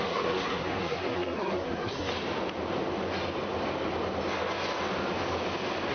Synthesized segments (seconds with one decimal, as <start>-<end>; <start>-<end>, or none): 0.0-2.1